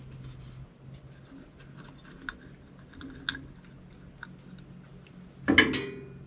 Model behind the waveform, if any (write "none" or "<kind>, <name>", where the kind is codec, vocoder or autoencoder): none